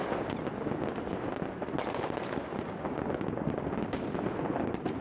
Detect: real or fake real